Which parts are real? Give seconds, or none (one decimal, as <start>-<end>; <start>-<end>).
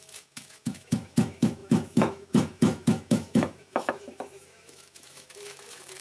none